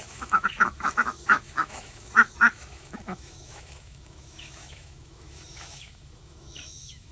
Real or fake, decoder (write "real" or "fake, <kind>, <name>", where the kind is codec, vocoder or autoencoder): fake, autoencoder, DAC-VAE